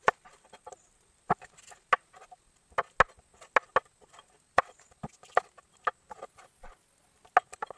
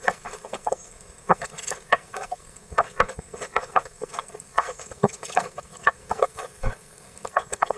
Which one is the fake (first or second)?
second